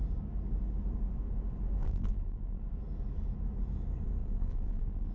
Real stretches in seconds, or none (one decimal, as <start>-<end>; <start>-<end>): 0.0-1.8; 2.6-4.2